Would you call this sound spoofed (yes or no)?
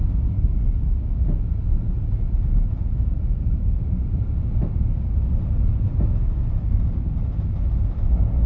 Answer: no